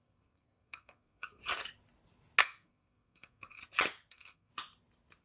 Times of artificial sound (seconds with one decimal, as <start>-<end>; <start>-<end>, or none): 0.0-1.4; 2.4-3.6; 4.1-4.5